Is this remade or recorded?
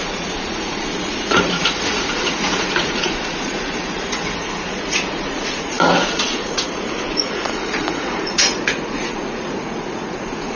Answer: remade